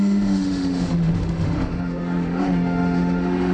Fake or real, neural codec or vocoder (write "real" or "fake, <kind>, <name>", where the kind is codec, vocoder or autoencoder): fake, autoencoder, DAC-VAE